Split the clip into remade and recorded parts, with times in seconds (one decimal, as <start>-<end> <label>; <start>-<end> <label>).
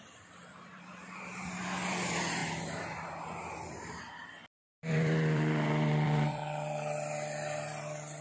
0.0-2.4 remade; 2.4-4.7 recorded; 4.7-8.2 remade